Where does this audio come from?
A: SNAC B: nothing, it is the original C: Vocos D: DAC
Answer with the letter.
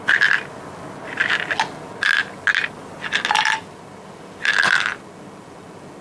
B